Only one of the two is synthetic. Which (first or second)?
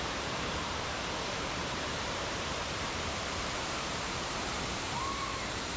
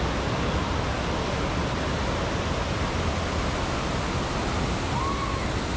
first